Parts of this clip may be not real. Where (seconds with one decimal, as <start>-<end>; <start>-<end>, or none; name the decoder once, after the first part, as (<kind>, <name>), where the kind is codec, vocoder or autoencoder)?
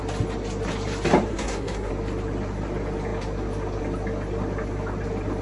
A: 1.3-1.9 (codec, SNAC)